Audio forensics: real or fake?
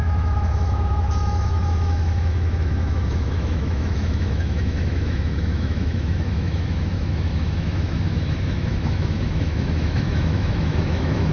fake